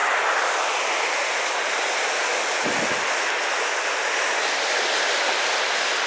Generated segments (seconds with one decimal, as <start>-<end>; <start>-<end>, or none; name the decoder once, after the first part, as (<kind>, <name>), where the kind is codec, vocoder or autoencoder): none